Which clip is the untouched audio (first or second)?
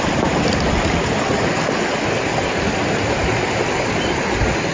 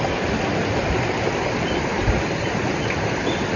first